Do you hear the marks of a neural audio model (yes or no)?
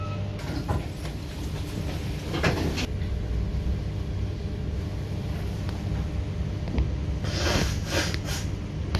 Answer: no